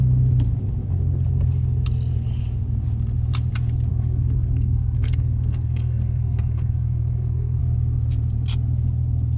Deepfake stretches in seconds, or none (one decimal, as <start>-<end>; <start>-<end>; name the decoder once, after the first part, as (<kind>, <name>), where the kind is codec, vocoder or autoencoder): 3.9-7.6 (codec, SNAC)